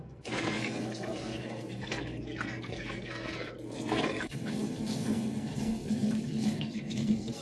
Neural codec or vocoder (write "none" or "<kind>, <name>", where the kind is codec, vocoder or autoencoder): codec, SNAC